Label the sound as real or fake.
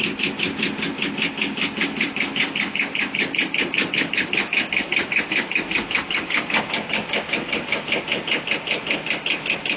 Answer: real